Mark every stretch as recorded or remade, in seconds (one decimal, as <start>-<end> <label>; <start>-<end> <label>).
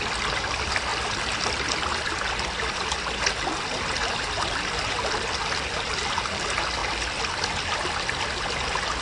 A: 0.0-9.0 recorded